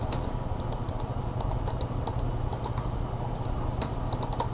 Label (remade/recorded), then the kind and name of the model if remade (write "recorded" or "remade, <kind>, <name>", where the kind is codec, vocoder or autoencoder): recorded